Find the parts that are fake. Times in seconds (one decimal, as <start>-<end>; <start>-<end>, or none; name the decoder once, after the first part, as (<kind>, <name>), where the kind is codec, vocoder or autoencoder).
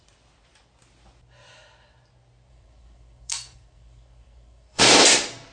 2.5-4.8 (codec, SNAC)